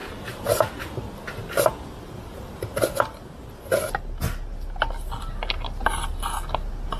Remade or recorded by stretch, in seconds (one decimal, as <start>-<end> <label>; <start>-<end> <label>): 0.0-0.7 remade; 0.7-7.0 recorded